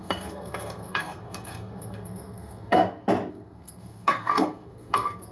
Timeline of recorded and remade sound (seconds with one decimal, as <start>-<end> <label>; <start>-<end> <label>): 0.0-2.8 remade; 2.8-3.3 recorded; 3.3-5.3 remade